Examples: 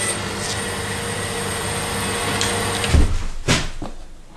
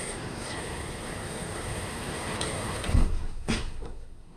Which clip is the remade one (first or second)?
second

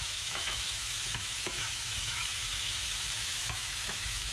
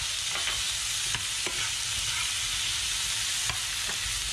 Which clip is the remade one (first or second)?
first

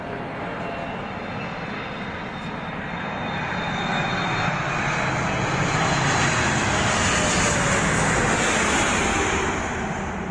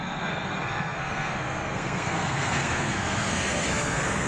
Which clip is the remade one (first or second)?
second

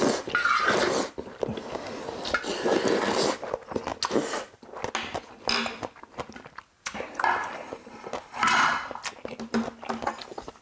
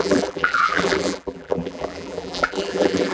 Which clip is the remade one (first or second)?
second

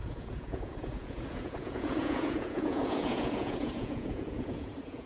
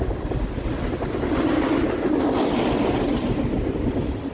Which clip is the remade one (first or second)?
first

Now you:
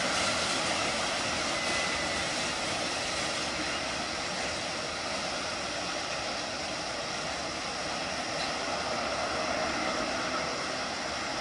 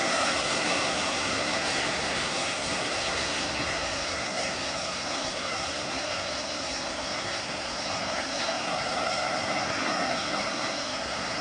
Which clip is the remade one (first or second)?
second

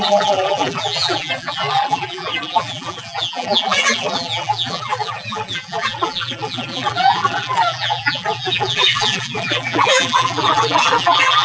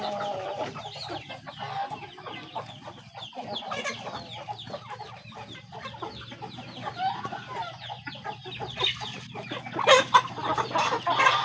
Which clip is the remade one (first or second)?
first